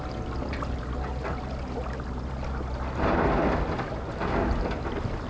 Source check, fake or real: real